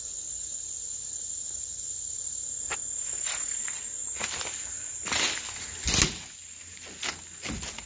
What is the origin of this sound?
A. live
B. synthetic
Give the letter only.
A